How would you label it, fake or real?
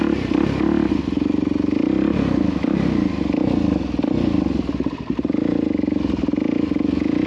real